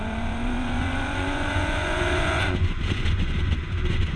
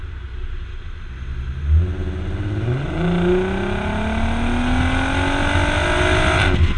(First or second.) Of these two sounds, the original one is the second